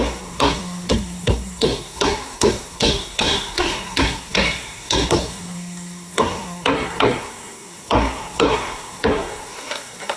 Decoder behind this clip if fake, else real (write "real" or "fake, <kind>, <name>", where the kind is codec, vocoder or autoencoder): fake, codec, SNAC